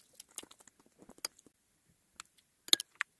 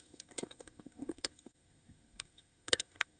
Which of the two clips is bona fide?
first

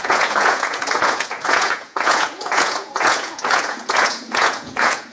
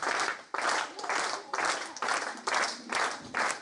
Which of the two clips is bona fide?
second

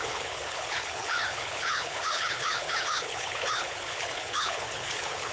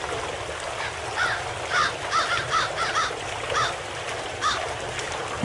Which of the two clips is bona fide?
second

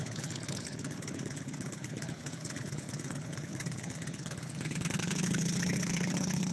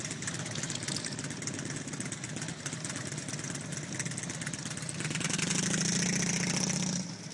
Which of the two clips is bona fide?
second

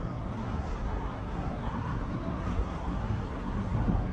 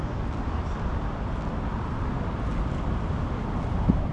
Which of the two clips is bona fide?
second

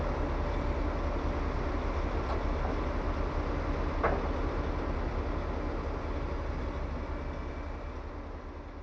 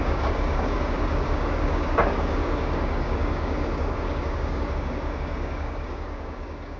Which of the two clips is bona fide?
first